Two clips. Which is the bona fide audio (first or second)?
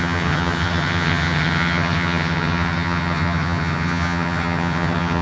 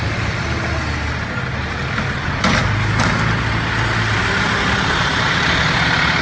second